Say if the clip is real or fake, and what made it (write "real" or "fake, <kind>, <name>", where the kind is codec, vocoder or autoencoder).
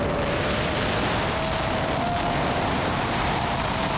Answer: real